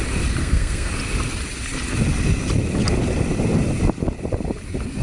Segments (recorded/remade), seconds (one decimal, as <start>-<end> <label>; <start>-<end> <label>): 0.0-0.4 recorded; 0.4-0.9 remade; 0.9-5.0 recorded